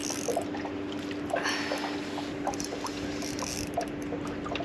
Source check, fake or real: real